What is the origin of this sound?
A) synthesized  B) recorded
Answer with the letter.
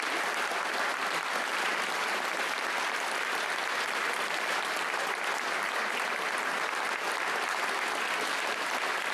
B